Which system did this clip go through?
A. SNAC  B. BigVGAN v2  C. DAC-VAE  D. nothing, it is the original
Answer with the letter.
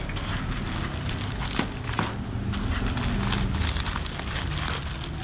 D